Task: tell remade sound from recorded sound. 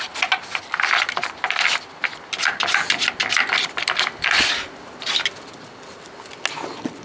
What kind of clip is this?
recorded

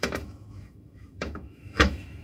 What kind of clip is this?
remade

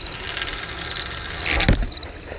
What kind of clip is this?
recorded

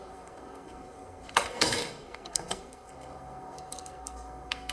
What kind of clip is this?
remade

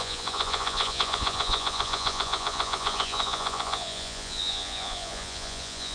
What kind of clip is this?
remade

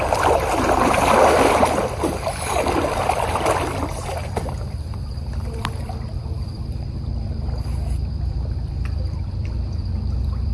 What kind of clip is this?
remade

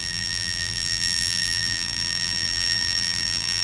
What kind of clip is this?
remade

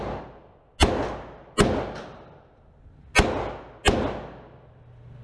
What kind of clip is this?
recorded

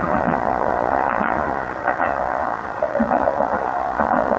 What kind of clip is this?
remade